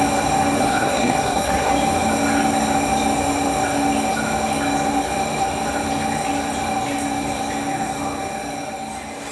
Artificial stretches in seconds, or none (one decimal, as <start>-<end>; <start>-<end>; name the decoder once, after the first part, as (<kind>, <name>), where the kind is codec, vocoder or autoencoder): 0.6-1.7 (codec, SNAC)